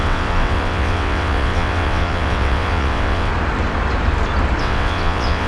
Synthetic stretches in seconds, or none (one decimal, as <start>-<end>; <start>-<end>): 0.0-3.3; 4.6-5.5